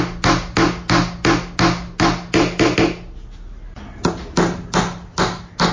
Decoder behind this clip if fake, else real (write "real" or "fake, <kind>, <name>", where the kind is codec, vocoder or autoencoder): real